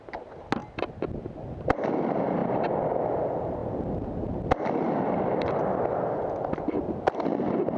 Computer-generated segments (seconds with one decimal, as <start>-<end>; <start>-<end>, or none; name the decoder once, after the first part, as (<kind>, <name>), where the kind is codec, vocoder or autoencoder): none